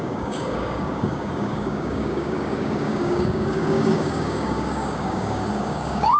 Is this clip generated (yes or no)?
yes